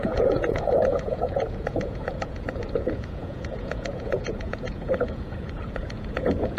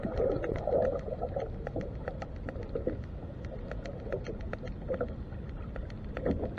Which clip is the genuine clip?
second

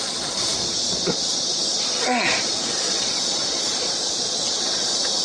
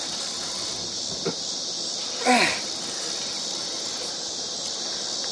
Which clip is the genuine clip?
second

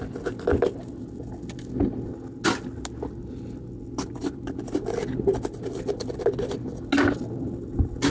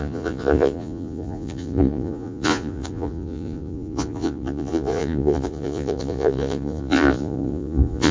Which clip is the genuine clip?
first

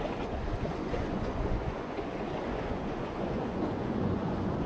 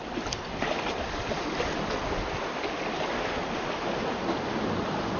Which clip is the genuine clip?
second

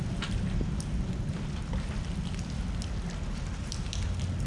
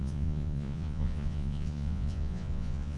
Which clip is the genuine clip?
first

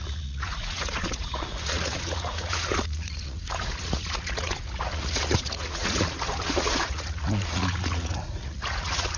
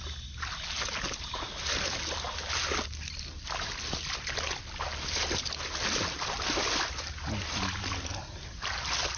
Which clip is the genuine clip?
second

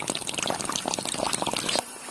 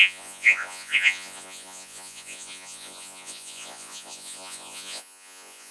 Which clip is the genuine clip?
first